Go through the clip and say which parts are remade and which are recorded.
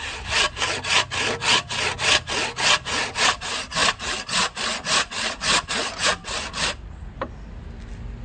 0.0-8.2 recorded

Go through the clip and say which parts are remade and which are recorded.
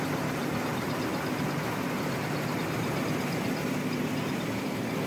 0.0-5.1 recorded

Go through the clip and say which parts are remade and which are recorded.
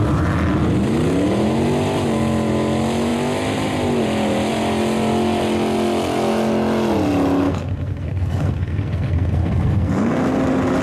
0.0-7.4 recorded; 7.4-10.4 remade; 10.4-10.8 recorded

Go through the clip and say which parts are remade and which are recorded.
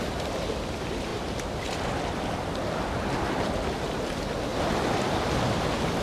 0.0-6.0 recorded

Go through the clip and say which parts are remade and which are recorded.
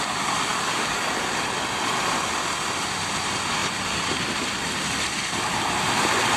0.0-0.5 recorded; 0.5-1.1 remade; 1.1-6.4 recorded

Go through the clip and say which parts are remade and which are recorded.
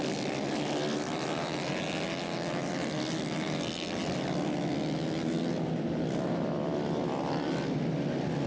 0.0-8.5 recorded